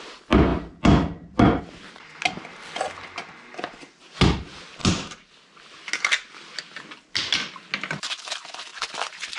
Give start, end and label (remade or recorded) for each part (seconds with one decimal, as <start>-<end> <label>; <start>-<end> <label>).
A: 0.0-9.4 recorded